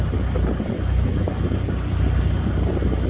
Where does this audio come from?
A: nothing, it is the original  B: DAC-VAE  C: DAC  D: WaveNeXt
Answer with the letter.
A